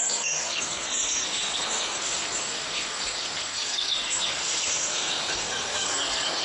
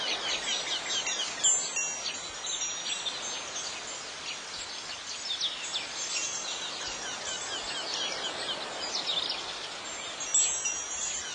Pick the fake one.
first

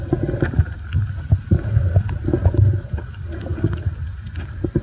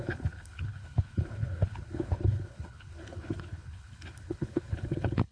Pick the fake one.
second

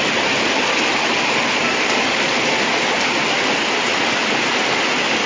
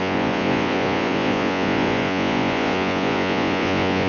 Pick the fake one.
second